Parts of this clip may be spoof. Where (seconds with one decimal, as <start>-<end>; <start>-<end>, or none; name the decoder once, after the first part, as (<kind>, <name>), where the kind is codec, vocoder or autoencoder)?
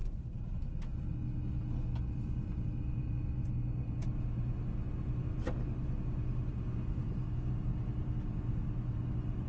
0.0-0.8 (vocoder, BigVGAN v2)